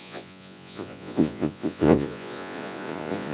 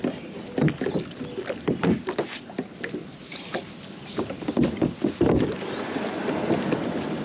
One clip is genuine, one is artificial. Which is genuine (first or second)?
second